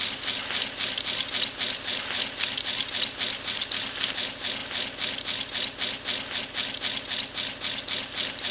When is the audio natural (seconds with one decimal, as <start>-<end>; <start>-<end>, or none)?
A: 0.0-8.5